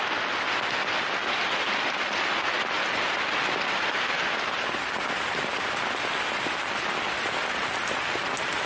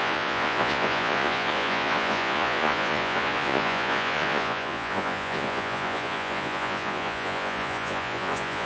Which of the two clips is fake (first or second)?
second